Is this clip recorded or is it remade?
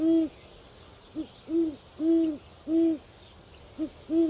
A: recorded